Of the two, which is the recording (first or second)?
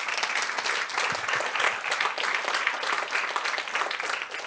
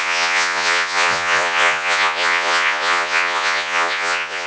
first